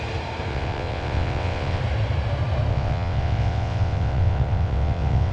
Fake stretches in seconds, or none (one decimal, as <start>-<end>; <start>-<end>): 0.5-1.8; 2.7-5.3